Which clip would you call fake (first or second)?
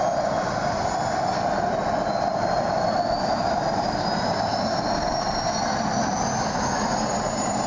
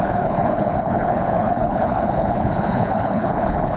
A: second